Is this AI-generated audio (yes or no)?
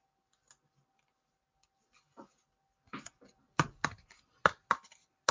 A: no